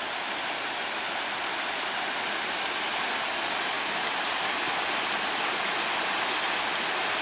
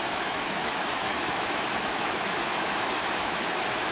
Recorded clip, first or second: first